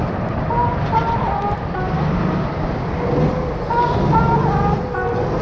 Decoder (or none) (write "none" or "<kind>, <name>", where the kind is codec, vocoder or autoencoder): none